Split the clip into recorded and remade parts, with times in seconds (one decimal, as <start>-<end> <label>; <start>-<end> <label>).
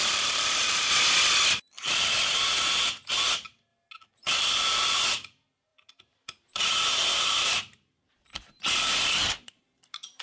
0.0-0.9 remade; 0.9-5.7 recorded; 5.7-9.6 remade; 9.6-10.2 recorded